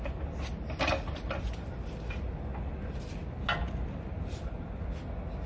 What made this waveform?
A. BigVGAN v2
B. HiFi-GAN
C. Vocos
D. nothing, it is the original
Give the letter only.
D